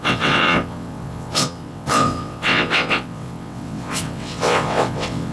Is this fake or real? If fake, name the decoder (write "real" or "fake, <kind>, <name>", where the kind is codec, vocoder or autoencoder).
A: fake, vocoder, WaveNeXt